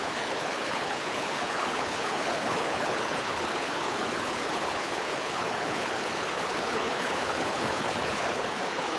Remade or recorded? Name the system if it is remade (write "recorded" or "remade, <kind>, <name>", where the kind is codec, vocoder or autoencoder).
remade, codec, HILCodec